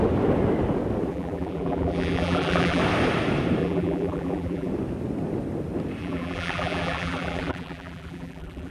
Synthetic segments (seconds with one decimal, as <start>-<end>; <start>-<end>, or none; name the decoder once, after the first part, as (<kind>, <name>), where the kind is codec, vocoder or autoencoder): 1.1-2.8 (vocoder, BigVGAN v2); 3.6-4.7; 6.0-8.7